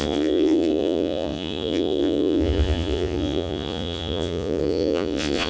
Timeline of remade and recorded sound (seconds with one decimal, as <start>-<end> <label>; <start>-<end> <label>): 0.0-5.5 remade